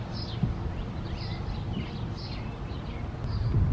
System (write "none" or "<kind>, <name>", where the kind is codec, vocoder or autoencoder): none